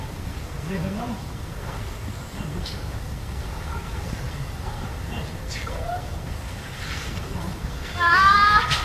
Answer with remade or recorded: remade